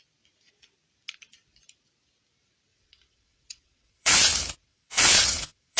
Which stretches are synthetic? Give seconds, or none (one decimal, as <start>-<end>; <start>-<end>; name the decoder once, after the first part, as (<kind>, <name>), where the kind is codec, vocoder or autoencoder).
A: 2.7-4.2 (vocoder, WaveNeXt); 4.7-5.8